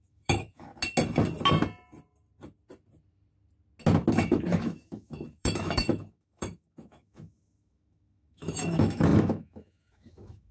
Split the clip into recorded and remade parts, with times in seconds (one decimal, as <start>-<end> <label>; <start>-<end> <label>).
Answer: 0.0-0.7 remade; 0.7-4.1 recorded; 4.1-10.5 remade